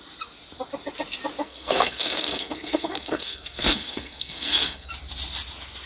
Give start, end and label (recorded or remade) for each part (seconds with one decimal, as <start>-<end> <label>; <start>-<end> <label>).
0.0-1.4 recorded; 1.4-4.9 remade; 4.9-5.9 recorded